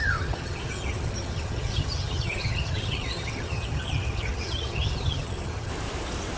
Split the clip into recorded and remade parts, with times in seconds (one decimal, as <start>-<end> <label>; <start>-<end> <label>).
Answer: 0.0-5.7 remade; 5.7-6.4 recorded